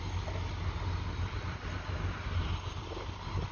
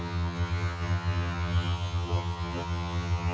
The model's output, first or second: second